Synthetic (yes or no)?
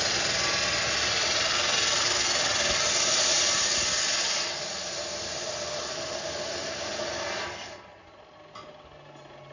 no